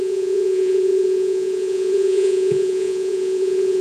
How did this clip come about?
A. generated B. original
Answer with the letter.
A